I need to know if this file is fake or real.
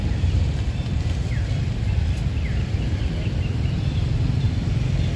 fake